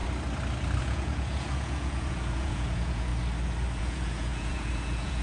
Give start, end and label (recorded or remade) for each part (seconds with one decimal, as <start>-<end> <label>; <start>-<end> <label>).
0.0-0.8 recorded; 0.8-3.1 remade; 3.1-3.8 recorded; 3.8-5.2 remade